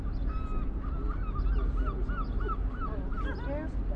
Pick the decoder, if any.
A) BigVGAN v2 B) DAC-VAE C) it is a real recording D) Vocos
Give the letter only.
C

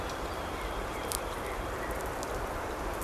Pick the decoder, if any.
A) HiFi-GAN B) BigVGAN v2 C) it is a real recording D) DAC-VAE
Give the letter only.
B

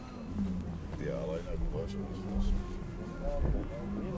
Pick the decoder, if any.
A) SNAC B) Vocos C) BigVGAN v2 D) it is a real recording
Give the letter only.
D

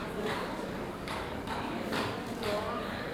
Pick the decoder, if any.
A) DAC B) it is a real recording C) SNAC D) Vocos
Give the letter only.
A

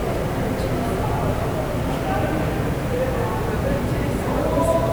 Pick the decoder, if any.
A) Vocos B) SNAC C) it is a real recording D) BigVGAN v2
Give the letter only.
C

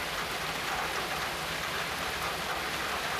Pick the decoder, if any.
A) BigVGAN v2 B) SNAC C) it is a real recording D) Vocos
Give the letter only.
C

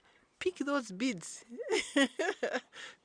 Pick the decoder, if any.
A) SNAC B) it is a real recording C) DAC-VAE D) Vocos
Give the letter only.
B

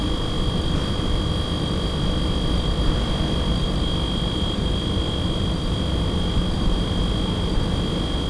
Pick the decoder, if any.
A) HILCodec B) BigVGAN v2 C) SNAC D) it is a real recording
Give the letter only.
B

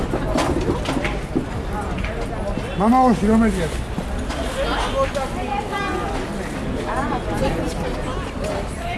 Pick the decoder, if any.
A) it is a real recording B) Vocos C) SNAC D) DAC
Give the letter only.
A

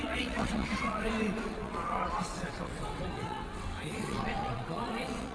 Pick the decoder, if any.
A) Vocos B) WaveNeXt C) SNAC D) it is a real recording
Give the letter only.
B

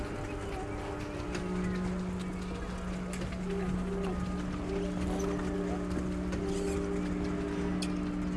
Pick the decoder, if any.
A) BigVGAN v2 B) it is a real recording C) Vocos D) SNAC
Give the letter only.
B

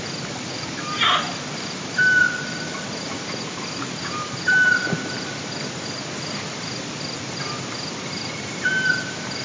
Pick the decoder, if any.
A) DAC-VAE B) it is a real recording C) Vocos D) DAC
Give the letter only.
B